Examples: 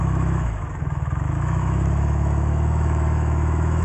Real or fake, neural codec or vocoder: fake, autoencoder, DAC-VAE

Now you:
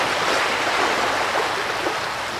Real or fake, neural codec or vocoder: real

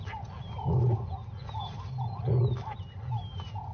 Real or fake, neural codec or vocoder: real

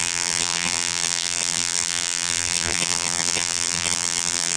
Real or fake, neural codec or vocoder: fake, vocoder, BigVGAN v2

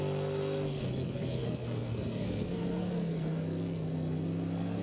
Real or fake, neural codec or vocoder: fake, codec, SNAC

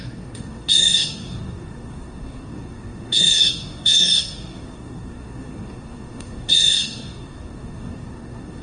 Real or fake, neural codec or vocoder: fake, codec, SNAC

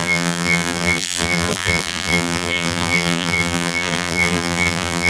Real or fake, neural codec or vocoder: fake, vocoder, BigVGAN v2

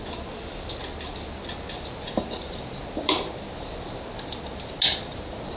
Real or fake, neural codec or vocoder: real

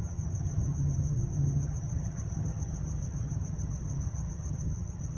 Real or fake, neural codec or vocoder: fake, vocoder, HiFi-GAN